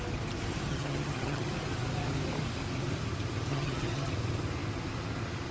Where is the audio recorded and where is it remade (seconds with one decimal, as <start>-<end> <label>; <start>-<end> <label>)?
0.0-0.7 recorded; 0.7-1.5 remade; 1.5-3.5 recorded; 3.5-4.1 remade; 4.1-5.5 recorded